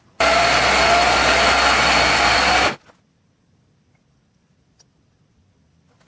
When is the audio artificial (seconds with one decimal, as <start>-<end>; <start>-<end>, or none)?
none